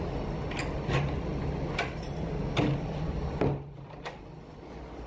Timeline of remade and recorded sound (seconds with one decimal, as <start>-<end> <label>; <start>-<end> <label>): 0.0-5.1 recorded